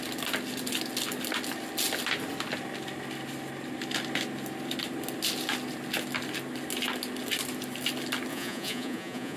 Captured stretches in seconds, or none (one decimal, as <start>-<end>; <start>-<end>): 0.0-8.3